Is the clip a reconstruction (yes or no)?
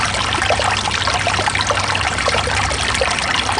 no